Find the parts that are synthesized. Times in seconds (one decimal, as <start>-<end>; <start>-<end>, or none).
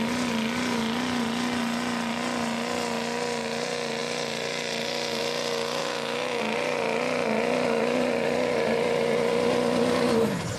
5.8-6.4